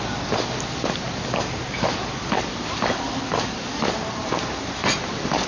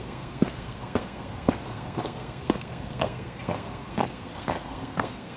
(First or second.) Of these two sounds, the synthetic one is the second